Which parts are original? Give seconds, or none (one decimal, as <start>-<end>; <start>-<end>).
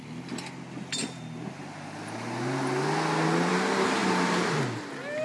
0.0-5.2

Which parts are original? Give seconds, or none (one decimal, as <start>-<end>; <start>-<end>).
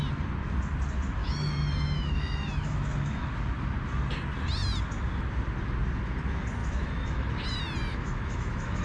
0.0-1.2; 3.3-6.6; 7.3-7.9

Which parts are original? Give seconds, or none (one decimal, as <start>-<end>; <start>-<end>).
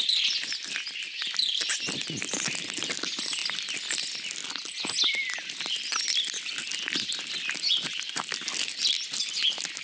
0.0-9.8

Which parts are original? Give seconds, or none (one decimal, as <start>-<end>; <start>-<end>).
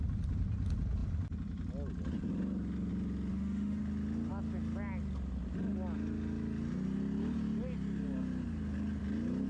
0.0-3.3; 3.8-9.5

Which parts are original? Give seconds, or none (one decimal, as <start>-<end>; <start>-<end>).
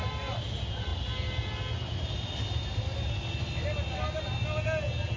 0.0-5.2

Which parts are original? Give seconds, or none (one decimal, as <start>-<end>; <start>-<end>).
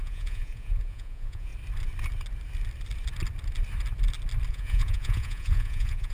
1.5-4.5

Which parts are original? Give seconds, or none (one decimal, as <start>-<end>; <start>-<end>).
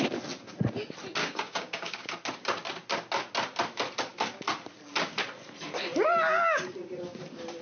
0.0-1.2; 2.1-7.6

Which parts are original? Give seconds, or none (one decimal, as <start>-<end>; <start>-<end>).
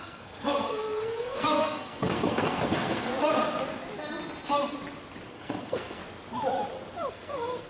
3.1-5.3; 6.0-7.1